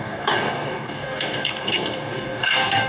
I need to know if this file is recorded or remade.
remade